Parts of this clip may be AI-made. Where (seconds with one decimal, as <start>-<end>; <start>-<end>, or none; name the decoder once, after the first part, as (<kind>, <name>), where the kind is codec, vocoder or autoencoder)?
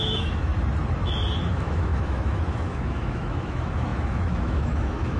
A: 0.0-0.5 (autoencoder, DAC-VAE); 1.5-5.2